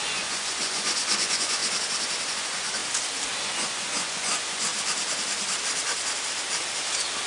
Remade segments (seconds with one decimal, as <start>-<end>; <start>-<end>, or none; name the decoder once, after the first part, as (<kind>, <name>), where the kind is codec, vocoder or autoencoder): 0.0-1.6 (vocoder, Vocos); 2.3-2.8; 3.4-4.7